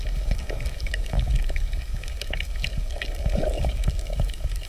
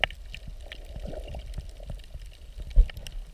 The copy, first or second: first